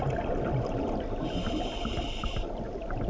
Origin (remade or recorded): recorded